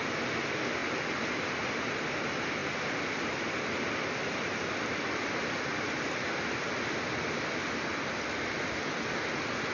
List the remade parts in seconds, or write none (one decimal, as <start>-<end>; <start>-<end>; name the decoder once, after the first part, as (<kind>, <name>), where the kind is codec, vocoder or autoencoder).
0.8-1.3 (vocoder, BigVGAN v2); 2.6-6.1; 7.6-8.4